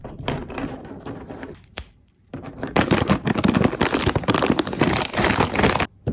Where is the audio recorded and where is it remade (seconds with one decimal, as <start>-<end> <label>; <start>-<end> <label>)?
0.0-3.4 remade; 3.4-6.1 recorded